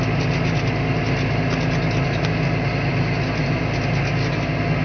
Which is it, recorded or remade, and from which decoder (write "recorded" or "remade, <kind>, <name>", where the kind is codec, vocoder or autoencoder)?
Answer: recorded